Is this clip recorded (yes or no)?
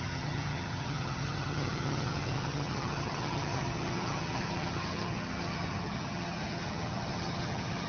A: no